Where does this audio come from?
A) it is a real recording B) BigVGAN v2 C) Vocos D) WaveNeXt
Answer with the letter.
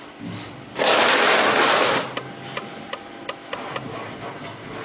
A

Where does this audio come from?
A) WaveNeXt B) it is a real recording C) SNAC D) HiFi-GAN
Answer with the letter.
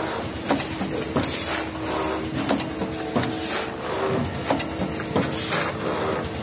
B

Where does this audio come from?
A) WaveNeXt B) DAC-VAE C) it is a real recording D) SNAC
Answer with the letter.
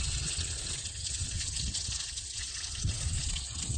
A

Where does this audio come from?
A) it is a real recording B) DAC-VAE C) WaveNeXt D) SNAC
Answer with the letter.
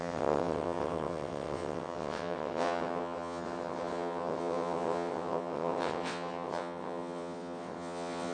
C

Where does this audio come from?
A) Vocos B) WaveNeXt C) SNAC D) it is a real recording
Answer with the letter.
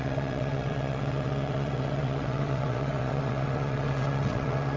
B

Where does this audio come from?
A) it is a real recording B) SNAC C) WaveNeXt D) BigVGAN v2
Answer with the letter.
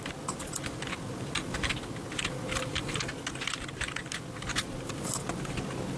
A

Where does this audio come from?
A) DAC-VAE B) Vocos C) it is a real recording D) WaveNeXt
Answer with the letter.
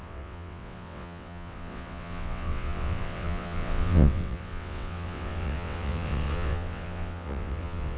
D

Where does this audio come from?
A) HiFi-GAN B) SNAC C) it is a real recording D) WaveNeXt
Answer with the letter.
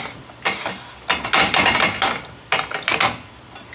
C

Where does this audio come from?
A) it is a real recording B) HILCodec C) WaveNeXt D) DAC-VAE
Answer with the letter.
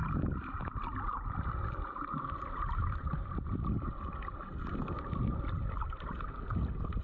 A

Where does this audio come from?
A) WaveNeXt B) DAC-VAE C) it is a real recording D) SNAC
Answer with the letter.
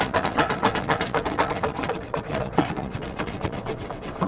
A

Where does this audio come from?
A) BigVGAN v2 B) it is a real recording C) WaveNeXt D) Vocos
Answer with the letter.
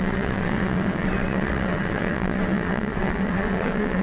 C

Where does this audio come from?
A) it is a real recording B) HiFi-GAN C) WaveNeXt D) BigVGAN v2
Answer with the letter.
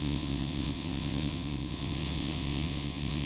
C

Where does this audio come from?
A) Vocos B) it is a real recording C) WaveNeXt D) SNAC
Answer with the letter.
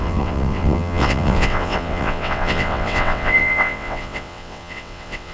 C